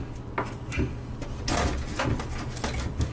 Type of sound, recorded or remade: recorded